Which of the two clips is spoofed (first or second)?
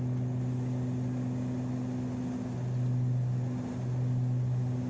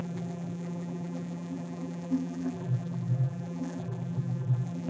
second